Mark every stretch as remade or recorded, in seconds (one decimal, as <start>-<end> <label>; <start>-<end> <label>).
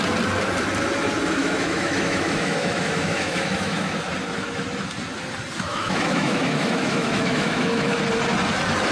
0.0-1.4 recorded; 1.4-3.9 remade; 3.9-5.7 recorded; 5.7-8.0 remade; 8.0-8.9 recorded